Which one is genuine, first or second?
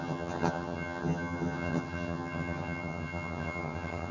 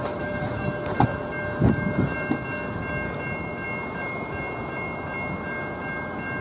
second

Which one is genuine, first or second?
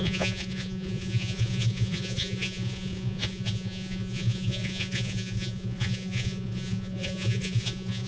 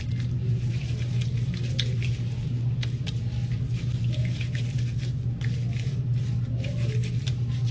second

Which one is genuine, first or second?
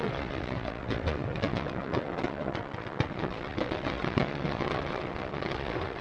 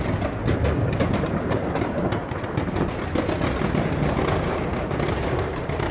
second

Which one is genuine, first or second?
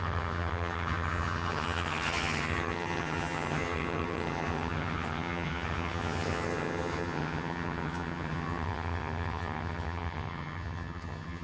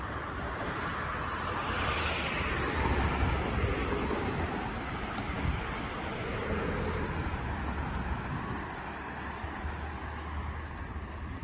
second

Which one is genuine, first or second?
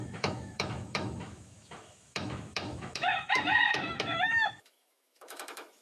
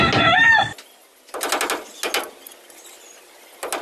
second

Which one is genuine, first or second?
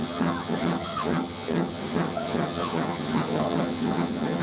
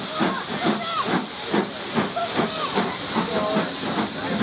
second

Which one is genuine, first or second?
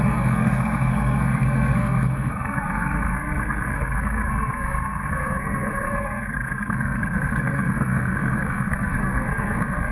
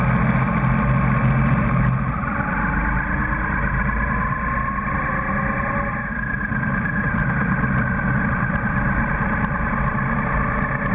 second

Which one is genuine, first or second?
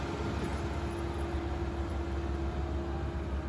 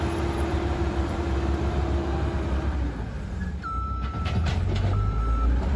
first